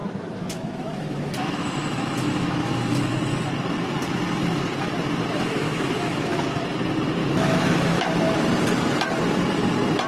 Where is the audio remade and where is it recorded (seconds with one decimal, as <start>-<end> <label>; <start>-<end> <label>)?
0.0-3.1 remade; 3.1-5.3 recorded; 5.3-6.2 remade; 6.2-7.2 recorded; 7.2-8.1 remade; 8.1-10.1 recorded